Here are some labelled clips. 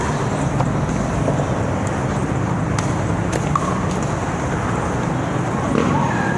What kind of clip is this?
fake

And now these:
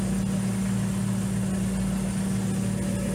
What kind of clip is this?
real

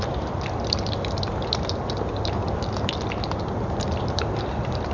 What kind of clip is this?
real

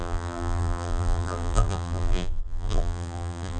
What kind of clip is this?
fake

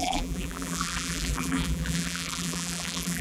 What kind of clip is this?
fake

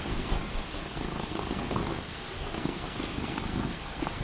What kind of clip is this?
fake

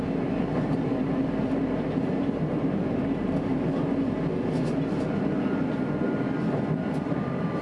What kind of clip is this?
real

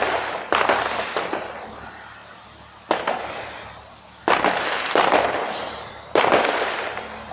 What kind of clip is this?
real